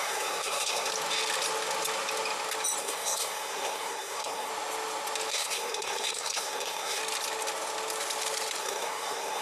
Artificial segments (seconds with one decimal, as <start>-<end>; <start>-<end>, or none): 0.0-0.9; 2.8-4.5; 5.3-7.0; 8.6-9.4